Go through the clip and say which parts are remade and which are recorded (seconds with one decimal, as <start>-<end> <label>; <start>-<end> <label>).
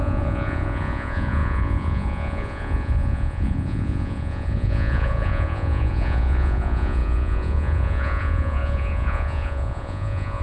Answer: 0.0-10.4 remade